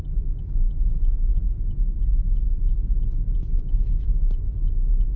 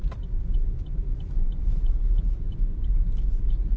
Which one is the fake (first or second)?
second